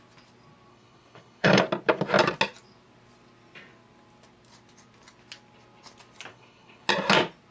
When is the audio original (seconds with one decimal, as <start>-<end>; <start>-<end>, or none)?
0.0-0.7; 1.6-6.3; 6.9-7.5